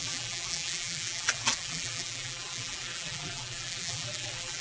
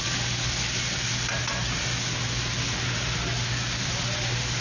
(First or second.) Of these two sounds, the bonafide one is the second